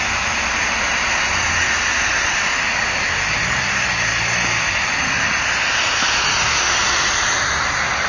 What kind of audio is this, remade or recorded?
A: recorded